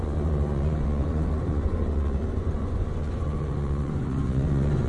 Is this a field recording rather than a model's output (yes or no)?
no